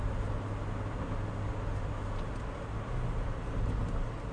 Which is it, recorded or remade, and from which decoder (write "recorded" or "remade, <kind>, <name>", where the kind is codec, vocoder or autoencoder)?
recorded